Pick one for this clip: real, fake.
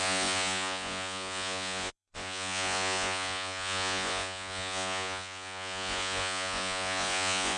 fake